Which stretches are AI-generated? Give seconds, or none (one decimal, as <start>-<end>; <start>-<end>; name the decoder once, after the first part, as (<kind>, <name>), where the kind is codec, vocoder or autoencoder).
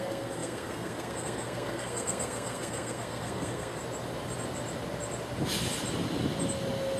0.0-3.8 (codec, SNAC)